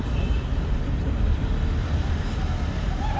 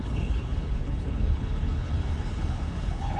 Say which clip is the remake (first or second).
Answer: second